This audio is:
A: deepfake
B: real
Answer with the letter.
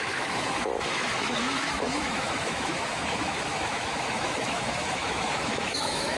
A